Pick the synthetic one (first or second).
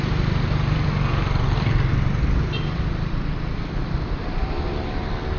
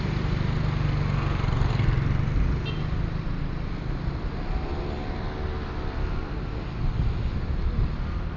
first